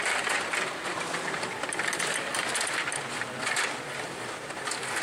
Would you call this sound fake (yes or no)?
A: no